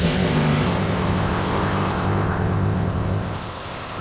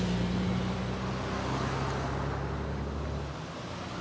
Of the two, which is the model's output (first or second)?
first